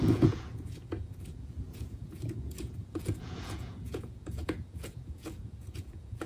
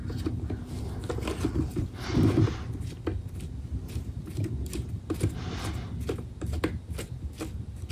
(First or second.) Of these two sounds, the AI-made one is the first